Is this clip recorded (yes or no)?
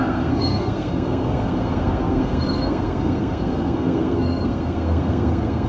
no